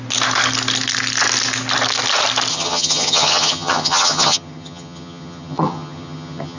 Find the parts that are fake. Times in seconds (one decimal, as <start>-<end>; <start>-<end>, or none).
2.5-6.6